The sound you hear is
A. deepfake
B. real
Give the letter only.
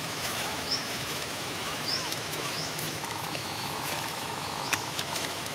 A